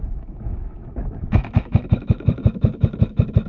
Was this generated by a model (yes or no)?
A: yes